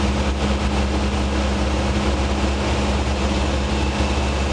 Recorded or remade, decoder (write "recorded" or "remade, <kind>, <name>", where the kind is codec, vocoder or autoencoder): recorded